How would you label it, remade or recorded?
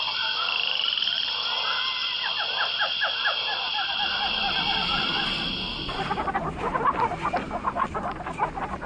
remade